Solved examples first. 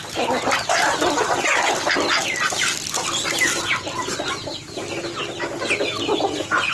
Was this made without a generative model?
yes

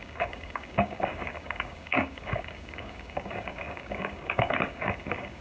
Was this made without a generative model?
no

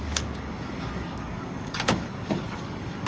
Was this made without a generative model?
no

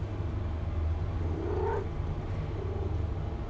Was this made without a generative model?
yes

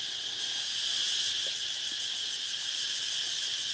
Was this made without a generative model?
yes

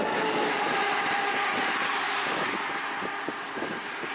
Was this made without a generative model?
yes